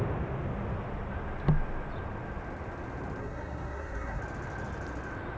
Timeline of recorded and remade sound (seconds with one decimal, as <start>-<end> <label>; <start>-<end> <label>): 0.0-3.2 recorded; 3.2-4.2 remade; 4.2-5.4 recorded